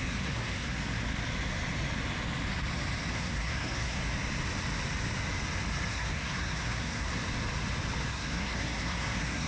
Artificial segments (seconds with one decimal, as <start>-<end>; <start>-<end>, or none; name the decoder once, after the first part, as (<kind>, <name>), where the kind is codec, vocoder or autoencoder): 0.0-0.8 (codec, SNAC); 3.1-4.0; 5.9-7.2; 8.1-9.5